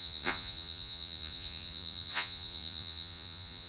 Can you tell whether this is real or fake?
fake